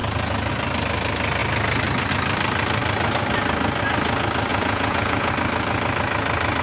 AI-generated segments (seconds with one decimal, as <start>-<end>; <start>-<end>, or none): 4.5-5.3